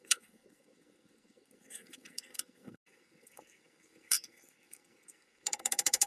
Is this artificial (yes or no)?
yes